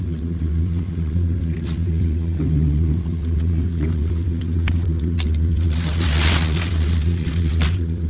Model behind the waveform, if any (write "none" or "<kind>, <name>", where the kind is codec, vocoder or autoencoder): vocoder, WaveNeXt